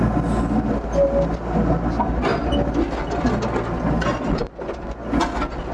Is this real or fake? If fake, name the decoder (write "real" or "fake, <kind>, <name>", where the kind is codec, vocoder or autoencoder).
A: real